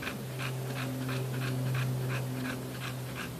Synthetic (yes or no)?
no